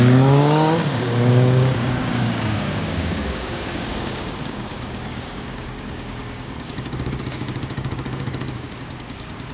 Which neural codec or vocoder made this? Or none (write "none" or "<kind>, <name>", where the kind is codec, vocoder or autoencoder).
codec, DAC